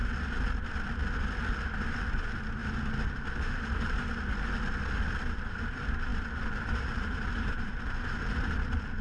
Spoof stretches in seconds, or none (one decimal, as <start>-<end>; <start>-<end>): 2.1-2.6; 3.4-4.2; 5.2-9.0